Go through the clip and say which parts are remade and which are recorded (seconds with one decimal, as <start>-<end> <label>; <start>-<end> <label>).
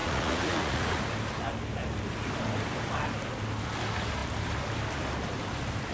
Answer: 0.0-1.0 remade; 1.0-5.9 recorded